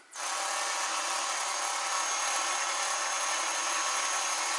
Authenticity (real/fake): real